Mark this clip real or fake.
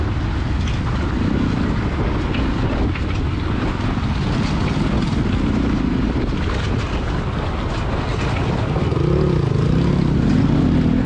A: real